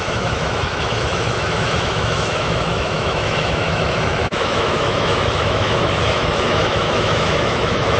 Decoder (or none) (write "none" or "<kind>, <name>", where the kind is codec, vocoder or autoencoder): autoencoder, DAC-VAE